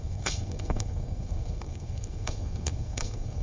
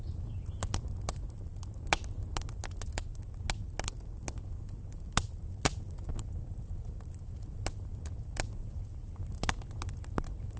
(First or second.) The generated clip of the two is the first